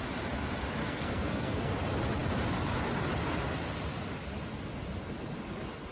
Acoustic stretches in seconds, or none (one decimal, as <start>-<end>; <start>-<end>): 0.0-0.8; 1.7-5.9